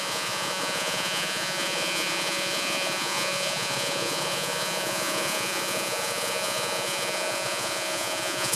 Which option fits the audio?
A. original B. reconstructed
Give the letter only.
B